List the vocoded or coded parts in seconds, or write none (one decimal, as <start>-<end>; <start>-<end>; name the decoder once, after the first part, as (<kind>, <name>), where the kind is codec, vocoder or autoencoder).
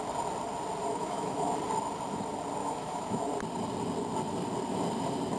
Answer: 0.9-1.5 (autoencoder, DAC-VAE); 2.6-3.2